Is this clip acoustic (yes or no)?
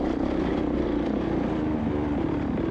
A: no